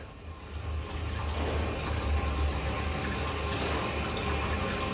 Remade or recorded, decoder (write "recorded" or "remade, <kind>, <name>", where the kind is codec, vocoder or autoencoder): recorded